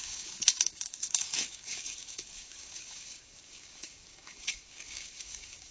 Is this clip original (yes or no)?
no